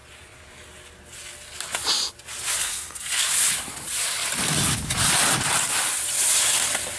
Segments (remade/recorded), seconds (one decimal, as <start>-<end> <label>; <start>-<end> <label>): 0.0-2.6 recorded; 2.6-3.2 remade; 3.2-7.0 recorded